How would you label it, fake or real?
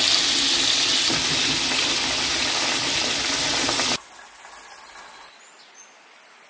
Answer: real